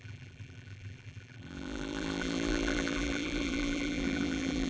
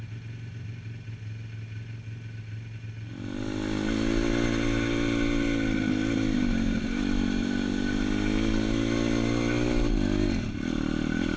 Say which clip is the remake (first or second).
first